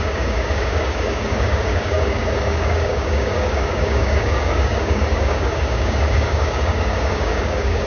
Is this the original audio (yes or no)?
no